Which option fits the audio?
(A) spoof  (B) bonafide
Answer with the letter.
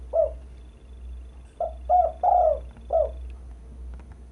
B